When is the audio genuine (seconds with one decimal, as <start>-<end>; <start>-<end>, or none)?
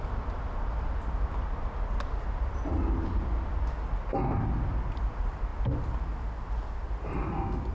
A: 0.0-7.7